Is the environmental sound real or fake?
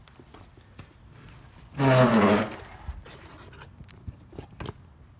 real